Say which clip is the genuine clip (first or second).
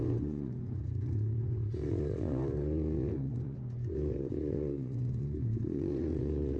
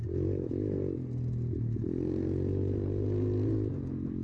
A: second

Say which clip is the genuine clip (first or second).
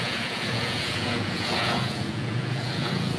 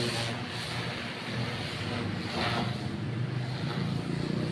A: second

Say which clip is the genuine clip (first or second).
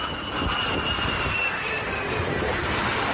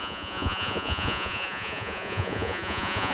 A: first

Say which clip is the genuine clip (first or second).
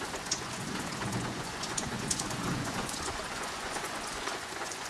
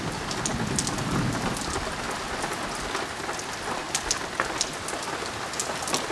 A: second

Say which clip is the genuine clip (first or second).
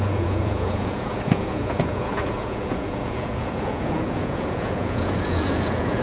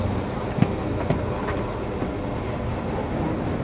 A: second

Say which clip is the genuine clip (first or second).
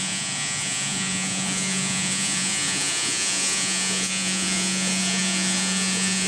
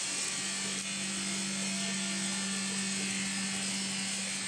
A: second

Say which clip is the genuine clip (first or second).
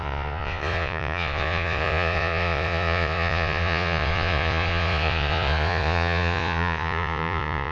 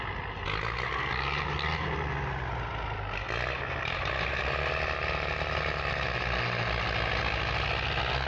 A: second